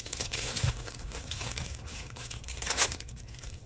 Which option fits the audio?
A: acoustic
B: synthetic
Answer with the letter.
B